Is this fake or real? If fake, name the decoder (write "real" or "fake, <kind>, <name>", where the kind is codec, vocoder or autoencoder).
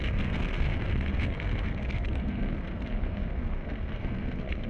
fake, codec, SNAC